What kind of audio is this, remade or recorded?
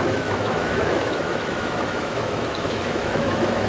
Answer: remade